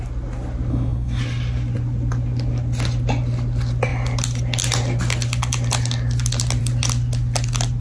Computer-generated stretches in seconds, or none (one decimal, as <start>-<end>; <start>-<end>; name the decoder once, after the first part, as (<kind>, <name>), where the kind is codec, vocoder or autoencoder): 0.7-1.2 (codec, SNAC)